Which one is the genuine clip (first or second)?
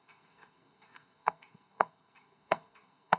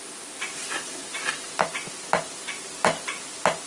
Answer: second